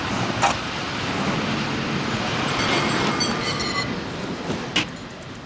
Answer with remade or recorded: recorded